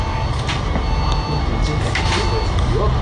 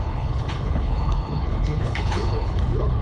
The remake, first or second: second